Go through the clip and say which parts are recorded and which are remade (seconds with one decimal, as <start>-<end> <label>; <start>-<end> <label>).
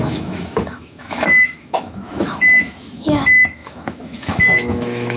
0.0-5.2 remade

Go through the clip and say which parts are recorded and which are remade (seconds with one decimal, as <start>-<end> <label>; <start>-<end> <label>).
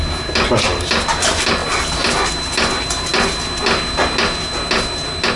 0.0-5.4 recorded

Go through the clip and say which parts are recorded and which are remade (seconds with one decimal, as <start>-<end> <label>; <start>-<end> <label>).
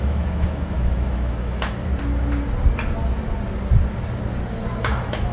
0.0-1.9 remade; 1.9-4.8 recorded; 4.8-5.3 remade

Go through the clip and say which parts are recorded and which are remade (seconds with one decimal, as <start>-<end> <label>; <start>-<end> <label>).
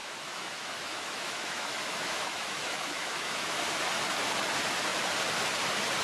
0.0-3.6 remade; 3.6-6.0 recorded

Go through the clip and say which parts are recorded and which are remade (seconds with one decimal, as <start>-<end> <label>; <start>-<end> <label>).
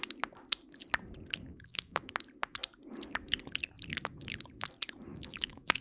0.0-1.5 recorded; 1.5-2.1 remade; 2.1-5.1 recorded; 5.1-5.8 remade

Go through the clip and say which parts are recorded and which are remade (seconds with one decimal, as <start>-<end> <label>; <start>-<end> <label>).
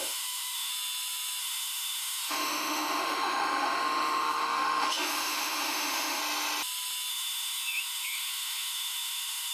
0.0-0.7 remade; 0.7-1.4 recorded; 1.4-6.2 remade; 6.2-7.1 recorded; 7.1-9.5 remade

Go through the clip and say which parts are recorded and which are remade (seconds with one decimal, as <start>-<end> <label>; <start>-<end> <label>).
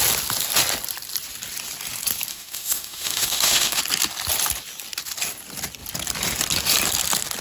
0.0-2.3 recorded; 2.3-3.8 remade; 3.8-7.4 recorded